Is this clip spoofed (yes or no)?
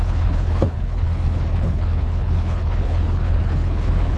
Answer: yes